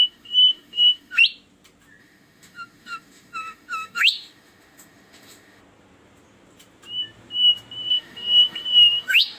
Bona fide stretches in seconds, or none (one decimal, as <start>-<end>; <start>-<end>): 1.2-2.0; 5.6-7.9